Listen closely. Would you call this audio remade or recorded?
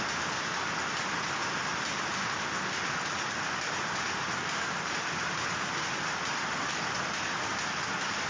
recorded